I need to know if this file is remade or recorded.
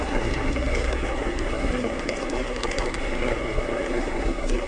remade